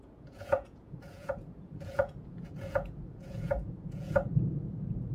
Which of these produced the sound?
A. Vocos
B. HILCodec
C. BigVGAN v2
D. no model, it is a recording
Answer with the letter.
A